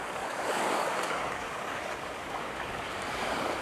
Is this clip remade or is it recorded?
remade